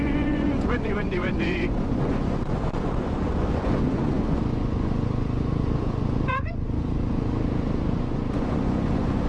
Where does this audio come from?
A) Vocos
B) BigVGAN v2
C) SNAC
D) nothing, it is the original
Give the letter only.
A